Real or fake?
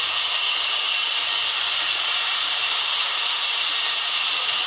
fake